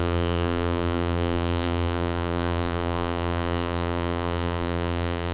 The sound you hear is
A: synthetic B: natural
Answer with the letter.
A